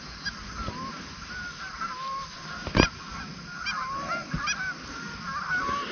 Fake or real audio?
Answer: real